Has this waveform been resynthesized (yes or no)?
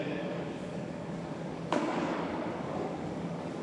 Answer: yes